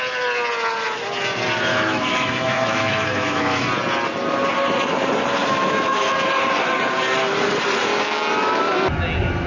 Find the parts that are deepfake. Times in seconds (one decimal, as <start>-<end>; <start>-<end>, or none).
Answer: 1.7-3.7; 5.4-6.0